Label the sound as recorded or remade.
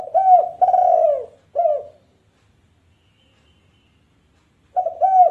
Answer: recorded